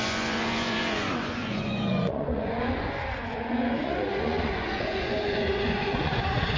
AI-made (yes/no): yes